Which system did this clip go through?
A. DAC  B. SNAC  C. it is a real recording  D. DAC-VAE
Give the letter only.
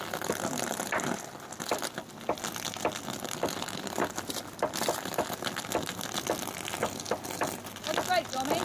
C